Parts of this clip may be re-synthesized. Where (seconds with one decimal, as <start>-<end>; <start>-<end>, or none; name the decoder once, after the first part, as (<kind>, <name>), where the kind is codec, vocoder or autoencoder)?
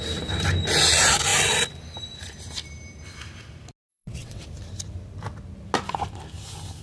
3.9-4.4 (vocoder, WaveNeXt)